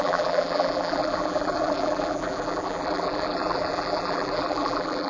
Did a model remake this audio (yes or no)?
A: yes